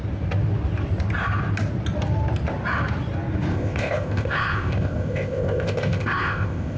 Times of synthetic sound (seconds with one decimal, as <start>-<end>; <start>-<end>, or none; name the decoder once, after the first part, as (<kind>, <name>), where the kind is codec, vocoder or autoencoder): 3.5-6.8 (codec, ZipCodec)